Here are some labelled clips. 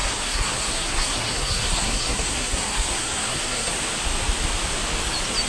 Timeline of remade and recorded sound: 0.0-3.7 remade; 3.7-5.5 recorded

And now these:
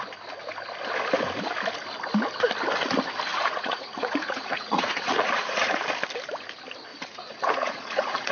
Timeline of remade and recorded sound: 0.0-3.3 recorded; 3.3-5.8 remade; 5.8-6.9 recorded; 6.9-8.3 remade